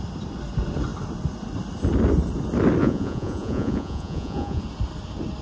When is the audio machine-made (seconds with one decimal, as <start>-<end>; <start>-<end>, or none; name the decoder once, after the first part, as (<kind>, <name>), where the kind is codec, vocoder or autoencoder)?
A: 2.8-4.6 (vocoder, Vocos)